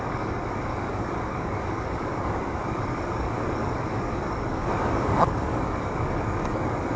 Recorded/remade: remade